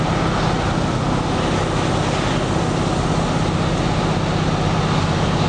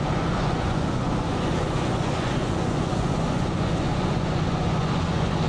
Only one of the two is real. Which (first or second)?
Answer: first